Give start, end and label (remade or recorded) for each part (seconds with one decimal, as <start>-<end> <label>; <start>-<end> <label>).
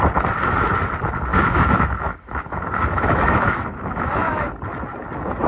0.0-1.3 recorded; 1.3-4.5 remade; 4.5-5.5 recorded